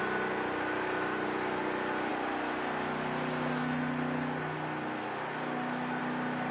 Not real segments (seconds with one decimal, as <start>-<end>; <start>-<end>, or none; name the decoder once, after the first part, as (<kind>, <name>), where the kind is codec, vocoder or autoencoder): none